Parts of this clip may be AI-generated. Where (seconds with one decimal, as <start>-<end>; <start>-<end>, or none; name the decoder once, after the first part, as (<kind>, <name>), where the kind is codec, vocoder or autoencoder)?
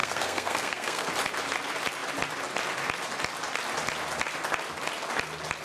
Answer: 0.0-1.1 (codec, SNAC)